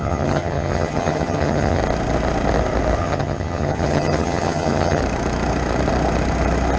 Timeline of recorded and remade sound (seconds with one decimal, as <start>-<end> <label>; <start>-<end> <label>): 0.0-1.8 remade; 1.8-3.0 recorded; 3.0-5.0 remade; 5.0-6.8 recorded